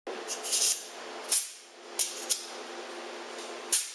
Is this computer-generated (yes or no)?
no